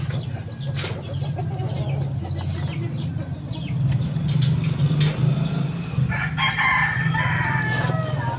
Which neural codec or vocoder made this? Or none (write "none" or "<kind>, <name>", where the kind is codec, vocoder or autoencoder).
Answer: none